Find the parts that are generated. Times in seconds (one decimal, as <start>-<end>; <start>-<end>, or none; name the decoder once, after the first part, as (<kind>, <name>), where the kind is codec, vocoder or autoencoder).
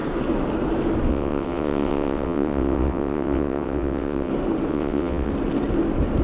1.1-4.3 (vocoder, WaveNeXt); 4.7-5.3